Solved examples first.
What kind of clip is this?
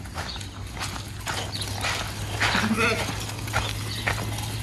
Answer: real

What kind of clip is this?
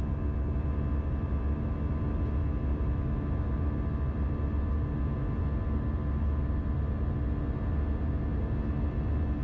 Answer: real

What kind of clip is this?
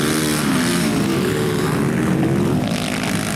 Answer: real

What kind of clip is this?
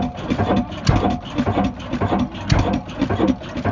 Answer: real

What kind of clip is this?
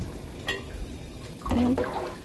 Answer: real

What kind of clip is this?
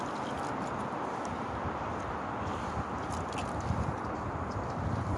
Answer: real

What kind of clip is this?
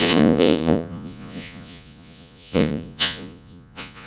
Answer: fake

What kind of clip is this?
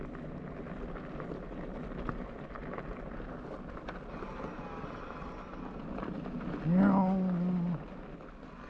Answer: real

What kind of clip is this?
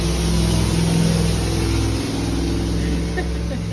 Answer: real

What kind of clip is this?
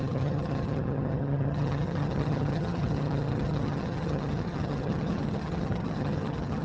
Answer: fake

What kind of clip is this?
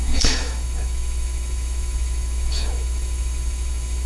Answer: fake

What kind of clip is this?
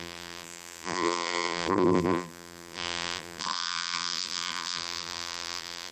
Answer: fake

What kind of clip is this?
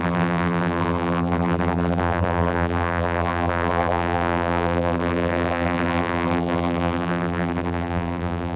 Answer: fake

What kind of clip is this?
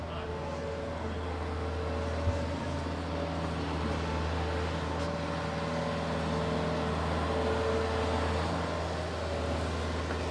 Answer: real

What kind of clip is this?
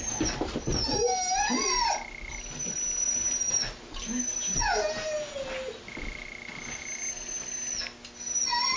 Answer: real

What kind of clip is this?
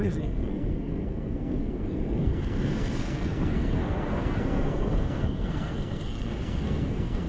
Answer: fake